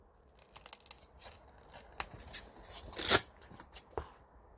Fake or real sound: real